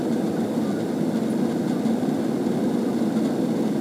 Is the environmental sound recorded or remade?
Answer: recorded